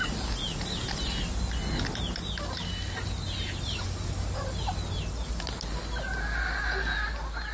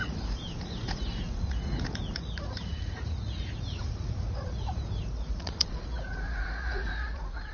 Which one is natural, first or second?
first